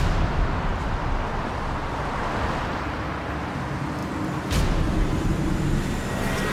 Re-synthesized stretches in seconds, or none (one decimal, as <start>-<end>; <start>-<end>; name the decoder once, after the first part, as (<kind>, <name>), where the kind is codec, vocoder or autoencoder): none